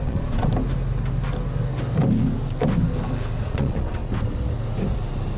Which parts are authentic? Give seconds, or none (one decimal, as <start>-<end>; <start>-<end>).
0.5-3.4; 4.0-5.4